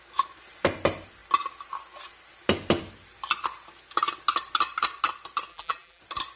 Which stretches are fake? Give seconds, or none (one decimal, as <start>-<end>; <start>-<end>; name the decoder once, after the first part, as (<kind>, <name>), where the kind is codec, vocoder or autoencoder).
5.5-6.0 (vocoder, BigVGAN v2)